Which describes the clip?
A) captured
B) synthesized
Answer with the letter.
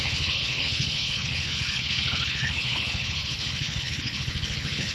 B